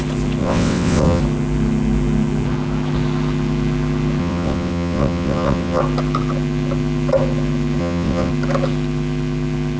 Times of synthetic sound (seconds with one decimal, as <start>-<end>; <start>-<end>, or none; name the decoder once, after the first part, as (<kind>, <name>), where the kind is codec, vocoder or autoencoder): 0.4-1.2 (vocoder, WaveNeXt); 4.2-5.8; 7.8-8.3